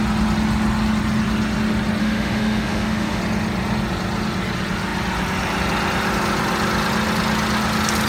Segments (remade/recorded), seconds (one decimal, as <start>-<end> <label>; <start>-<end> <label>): 0.0-2.0 recorded; 2.0-3.2 remade; 3.2-8.1 recorded